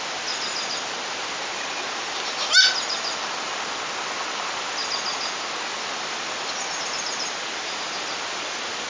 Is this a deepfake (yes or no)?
no